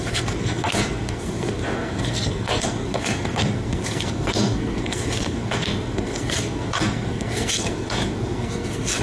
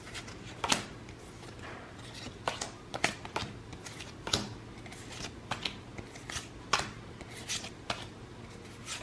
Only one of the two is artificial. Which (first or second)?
first